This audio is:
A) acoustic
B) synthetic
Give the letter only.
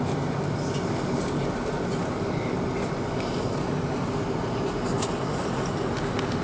A